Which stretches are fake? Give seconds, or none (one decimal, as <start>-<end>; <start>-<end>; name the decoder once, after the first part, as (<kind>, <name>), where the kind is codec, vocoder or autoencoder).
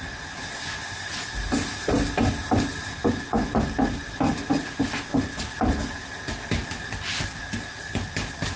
none